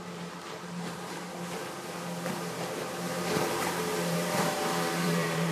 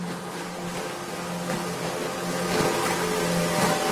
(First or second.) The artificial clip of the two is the first